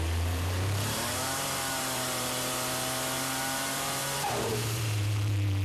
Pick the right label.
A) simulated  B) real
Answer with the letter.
A